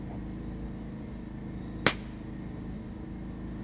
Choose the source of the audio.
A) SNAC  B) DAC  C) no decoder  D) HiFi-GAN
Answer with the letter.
C